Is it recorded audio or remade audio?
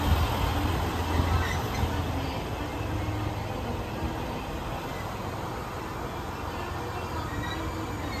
recorded